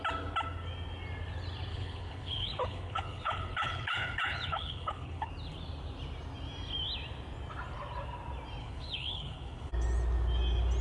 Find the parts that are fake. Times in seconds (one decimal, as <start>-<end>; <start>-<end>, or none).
1.7-5.3; 8.6-9.7

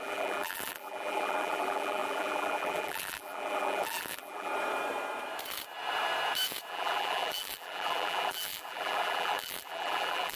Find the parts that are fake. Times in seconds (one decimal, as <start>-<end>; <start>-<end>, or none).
0.0-4.5; 6.7-10.4

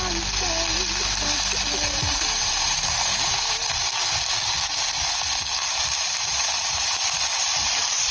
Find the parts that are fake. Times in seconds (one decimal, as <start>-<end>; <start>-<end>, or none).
2.1-4.1; 5.6-8.1

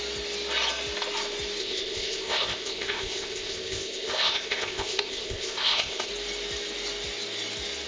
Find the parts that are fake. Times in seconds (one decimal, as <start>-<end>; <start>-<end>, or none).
1.6-6.1